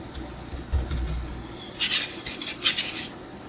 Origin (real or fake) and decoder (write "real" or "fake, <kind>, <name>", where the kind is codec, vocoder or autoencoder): real